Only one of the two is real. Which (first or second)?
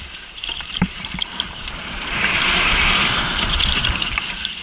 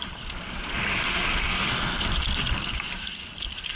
second